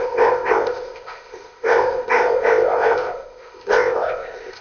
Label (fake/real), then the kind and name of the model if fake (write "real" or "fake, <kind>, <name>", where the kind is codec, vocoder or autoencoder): fake, codec, ZipCodec